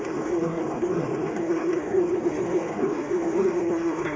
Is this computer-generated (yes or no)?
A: yes